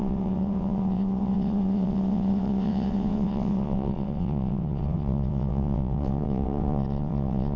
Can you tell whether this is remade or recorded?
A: remade